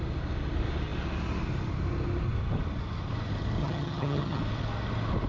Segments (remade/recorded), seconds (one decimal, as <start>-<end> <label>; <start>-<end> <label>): 0.0-3.6 recorded; 3.6-4.4 remade; 4.4-5.3 recorded